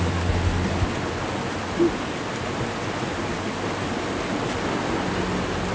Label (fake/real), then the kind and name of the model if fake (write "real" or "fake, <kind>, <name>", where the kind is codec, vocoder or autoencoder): real